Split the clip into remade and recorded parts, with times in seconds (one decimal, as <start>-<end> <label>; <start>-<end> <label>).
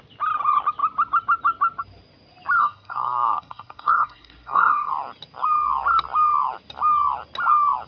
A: 0.0-2.6 recorded; 2.6-4.9 remade; 4.9-7.9 recorded